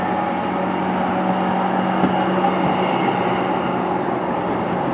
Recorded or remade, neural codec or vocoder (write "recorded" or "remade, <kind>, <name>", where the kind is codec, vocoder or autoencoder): recorded